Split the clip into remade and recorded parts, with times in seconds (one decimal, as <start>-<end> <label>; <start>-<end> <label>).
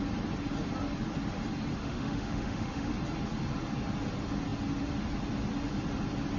0.0-1.8 recorded; 1.8-2.9 remade; 2.9-6.4 recorded